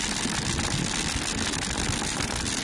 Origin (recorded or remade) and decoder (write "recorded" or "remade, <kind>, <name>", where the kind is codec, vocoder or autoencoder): recorded